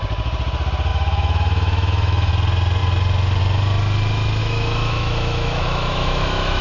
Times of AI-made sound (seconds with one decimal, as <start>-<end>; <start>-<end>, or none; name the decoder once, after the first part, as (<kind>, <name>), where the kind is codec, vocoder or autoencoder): 0.9-2.3 (autoencoder, DAC-VAE); 4.4-6.6